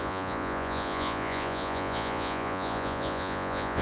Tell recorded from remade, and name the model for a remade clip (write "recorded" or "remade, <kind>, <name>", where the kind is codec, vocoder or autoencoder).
remade, vocoder, Vocos